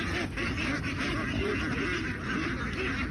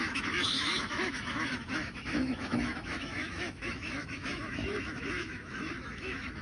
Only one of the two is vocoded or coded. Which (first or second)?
second